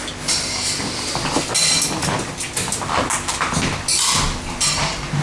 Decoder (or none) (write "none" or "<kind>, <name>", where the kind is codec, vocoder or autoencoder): none